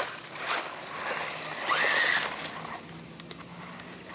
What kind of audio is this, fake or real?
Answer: real